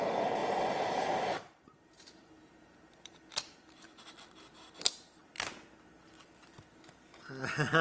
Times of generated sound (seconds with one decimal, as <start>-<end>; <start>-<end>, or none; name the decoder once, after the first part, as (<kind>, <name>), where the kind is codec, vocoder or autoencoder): 0.4-4.0 (vocoder, BigVGAN v2)